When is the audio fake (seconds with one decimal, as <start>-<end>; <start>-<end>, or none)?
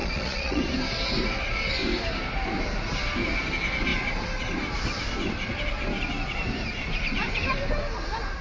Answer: 0.0-0.6